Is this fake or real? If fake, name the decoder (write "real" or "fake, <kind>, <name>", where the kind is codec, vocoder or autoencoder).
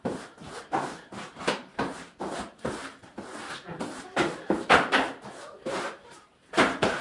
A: fake, vocoder, BigVGAN v2